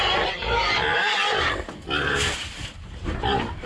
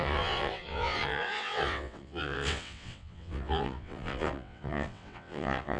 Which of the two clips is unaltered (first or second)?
first